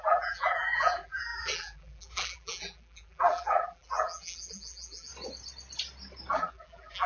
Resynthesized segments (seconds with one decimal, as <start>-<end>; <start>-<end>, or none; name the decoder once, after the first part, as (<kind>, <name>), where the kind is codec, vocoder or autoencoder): 0.0-5.1 (vocoder, BigVGAN v2); 6.3-7.1